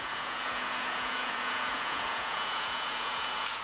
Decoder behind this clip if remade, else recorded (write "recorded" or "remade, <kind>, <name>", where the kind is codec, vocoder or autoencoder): remade, vocoder, Vocos